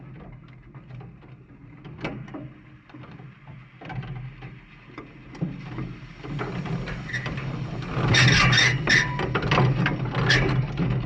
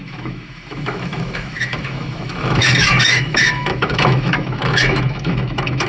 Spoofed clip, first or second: second